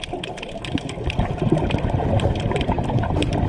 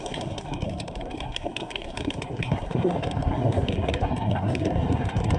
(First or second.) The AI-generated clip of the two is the second